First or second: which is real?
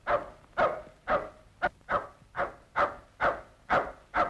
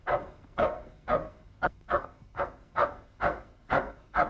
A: first